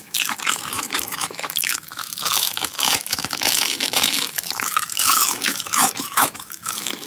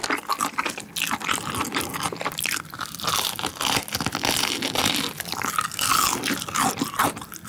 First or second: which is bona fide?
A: second